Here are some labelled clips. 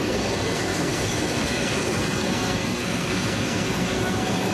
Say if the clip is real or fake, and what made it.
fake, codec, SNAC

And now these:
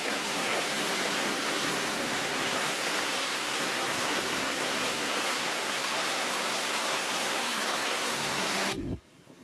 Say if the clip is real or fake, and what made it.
fake, codec, SNAC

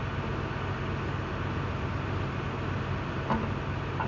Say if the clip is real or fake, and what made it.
real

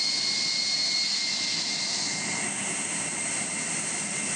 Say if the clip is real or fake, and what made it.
real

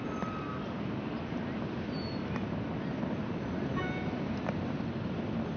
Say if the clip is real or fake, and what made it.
real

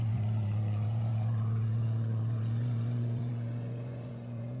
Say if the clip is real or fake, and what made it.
fake, vocoder, Vocos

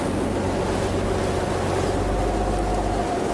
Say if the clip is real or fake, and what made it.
real